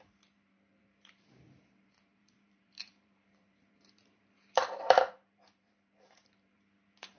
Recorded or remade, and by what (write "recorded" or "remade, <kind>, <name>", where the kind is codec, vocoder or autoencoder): remade, vocoder, BigVGAN v2